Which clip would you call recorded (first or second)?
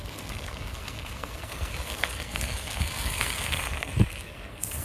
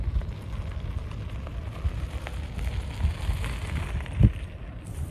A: second